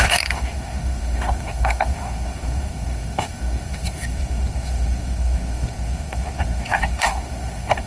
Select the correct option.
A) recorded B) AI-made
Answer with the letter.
B